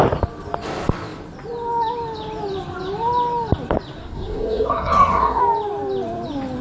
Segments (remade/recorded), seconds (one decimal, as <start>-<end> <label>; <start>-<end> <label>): 0.0-4.0 recorded; 4.0-5.4 remade; 5.4-6.6 recorded